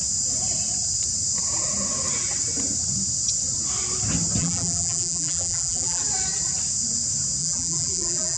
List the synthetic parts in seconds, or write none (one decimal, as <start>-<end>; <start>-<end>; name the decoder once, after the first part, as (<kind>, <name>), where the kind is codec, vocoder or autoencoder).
4.4-6.0 (vocoder, BigVGAN v2); 7.4-8.4